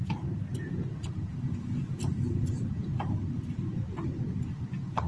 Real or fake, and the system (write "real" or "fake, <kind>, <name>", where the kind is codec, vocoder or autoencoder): real